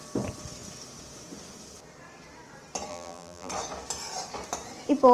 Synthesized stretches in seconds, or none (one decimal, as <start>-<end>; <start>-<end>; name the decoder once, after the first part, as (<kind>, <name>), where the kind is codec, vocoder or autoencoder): 2.9-3.5 (vocoder, BigVGAN v2)